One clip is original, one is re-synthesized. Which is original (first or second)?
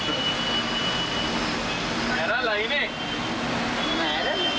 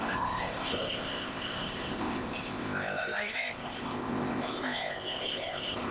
first